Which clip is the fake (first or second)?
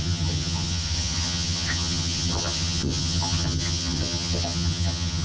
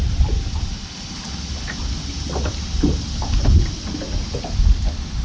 first